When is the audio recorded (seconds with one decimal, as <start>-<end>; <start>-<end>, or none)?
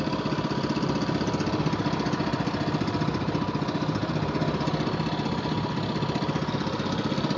0.0-7.4